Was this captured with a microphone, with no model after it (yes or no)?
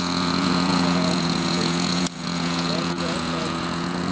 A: no